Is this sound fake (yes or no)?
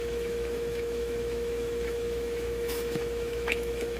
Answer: yes